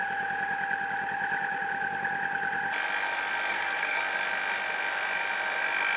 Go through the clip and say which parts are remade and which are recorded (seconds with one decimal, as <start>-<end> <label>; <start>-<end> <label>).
0.0-3.5 recorded; 3.5-4.0 remade; 4.0-6.0 recorded